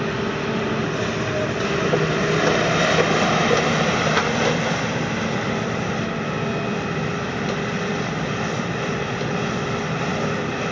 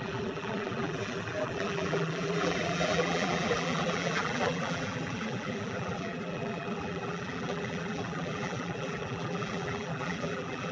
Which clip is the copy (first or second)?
second